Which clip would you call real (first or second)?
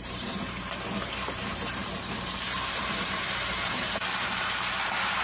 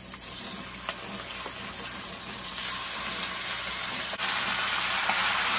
second